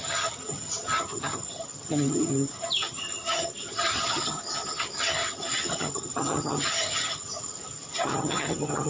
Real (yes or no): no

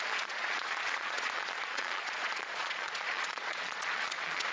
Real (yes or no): no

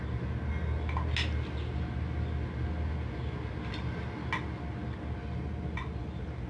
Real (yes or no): yes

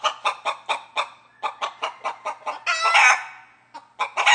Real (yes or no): yes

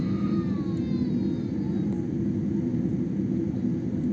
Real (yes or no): yes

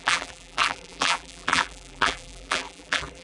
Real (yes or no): no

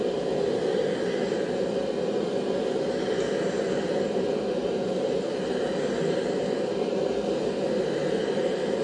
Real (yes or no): yes